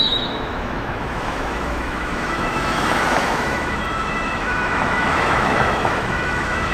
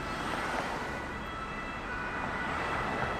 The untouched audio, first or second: second